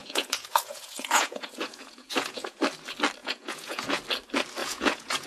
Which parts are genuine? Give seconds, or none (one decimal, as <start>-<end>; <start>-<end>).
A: 2.6-3.2; 4.0-4.6